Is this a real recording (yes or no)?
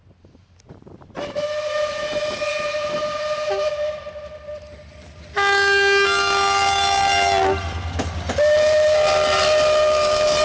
yes